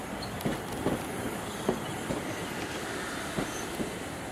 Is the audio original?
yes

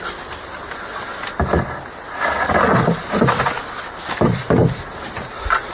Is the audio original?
yes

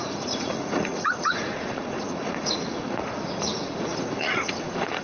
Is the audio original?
no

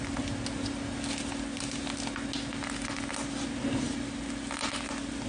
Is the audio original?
yes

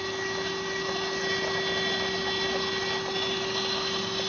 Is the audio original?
yes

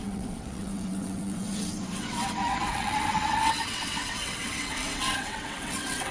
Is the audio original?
no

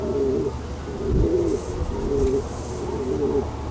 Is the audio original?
yes